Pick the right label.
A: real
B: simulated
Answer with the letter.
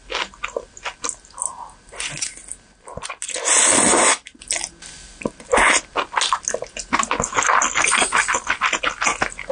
A